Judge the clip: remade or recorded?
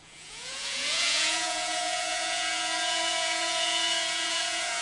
remade